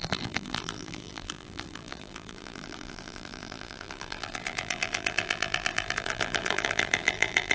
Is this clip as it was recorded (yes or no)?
no